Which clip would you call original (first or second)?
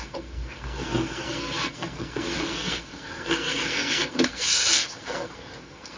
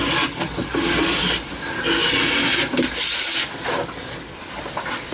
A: second